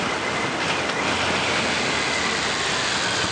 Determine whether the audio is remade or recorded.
recorded